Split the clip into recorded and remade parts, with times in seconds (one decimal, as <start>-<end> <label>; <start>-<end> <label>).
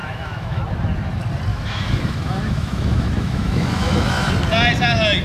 0.0-0.6 remade; 0.6-1.5 recorded; 1.5-4.3 remade; 4.3-5.2 recorded